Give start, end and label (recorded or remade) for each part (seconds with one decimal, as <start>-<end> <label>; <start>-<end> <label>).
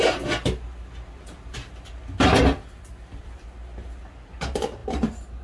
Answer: 0.0-5.4 recorded